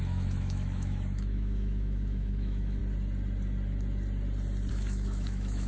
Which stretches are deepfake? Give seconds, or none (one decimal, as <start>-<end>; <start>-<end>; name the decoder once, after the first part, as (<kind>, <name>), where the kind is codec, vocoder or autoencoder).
0.0-2.8 (autoencoder, DAC-VAE); 4.7-5.7